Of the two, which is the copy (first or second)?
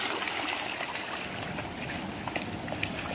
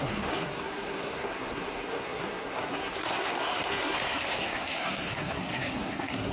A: second